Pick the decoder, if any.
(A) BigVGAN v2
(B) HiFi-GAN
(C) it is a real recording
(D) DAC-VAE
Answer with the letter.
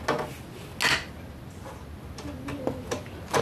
C